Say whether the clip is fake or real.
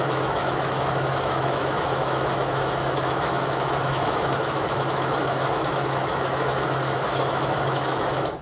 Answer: fake